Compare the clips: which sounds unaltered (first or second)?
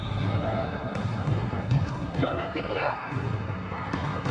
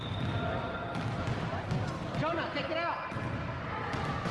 second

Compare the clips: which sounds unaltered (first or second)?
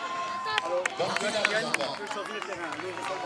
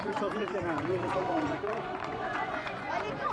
first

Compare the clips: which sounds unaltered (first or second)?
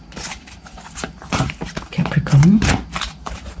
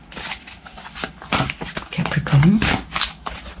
second